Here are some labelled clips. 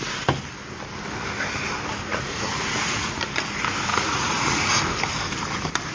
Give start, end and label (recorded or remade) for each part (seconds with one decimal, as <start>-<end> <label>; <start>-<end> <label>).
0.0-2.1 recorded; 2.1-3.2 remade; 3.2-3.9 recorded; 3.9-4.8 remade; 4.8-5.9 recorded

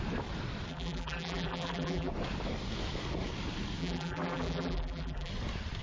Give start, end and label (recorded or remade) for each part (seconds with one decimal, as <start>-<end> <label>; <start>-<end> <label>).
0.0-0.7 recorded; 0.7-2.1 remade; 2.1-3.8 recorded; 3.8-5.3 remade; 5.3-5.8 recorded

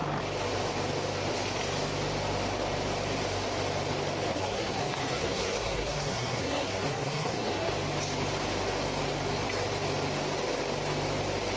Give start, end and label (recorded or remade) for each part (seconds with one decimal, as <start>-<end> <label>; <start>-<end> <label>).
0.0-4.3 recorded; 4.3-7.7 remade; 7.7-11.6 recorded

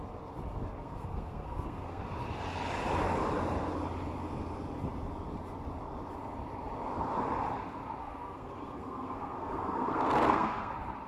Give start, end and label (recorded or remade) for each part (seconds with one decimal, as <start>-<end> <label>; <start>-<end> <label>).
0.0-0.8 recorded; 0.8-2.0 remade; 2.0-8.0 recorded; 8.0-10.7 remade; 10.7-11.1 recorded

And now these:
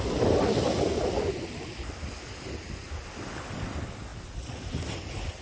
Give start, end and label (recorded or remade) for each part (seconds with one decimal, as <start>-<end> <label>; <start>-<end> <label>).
0.0-5.4 recorded